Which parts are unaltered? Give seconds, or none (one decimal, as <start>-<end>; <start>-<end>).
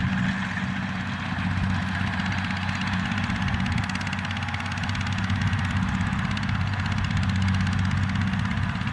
0.0-8.9